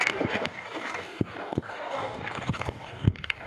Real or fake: fake